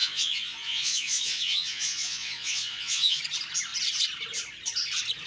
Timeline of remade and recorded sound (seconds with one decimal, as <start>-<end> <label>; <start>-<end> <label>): 0.0-3.2 remade; 3.2-5.3 recorded